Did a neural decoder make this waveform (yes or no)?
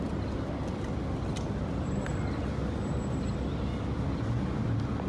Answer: no